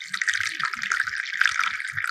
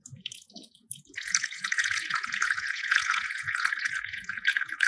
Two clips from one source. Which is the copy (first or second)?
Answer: second